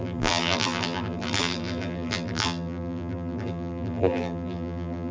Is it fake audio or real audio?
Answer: fake